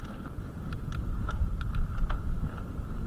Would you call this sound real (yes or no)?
yes